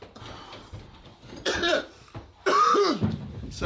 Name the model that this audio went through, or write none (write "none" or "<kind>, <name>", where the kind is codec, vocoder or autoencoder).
vocoder, BigVGAN v2